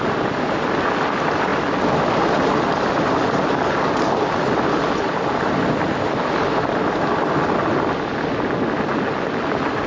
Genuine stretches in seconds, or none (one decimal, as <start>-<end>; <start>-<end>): 0.0-9.9